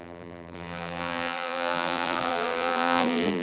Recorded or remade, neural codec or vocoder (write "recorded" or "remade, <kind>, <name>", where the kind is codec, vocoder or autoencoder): remade, vocoder, BigVGAN v2